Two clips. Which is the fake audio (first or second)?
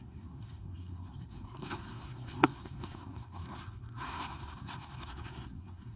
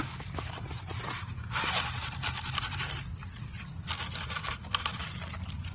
first